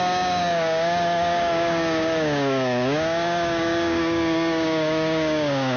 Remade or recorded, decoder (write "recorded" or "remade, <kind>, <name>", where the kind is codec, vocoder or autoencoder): remade, codec, DAC